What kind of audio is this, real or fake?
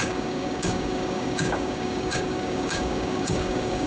fake